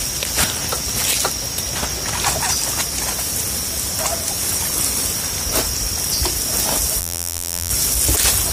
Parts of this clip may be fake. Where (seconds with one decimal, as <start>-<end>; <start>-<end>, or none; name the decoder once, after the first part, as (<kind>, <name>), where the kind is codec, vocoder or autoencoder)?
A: 7.0-7.7 (vocoder, BigVGAN v2)